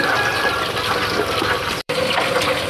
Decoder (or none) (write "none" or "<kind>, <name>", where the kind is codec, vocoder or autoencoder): vocoder, BigVGAN v2